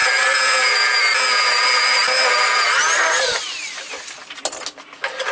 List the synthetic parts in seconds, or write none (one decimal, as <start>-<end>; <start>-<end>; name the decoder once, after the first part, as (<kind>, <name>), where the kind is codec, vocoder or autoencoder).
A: none